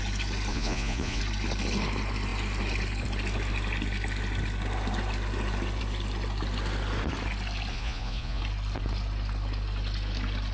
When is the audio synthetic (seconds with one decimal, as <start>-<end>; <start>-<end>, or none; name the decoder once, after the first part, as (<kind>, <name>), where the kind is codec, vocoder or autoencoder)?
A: 0.5-1.2 (vocoder, Vocos); 7.7-8.4